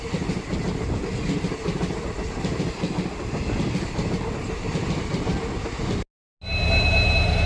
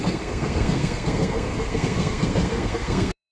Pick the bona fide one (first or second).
first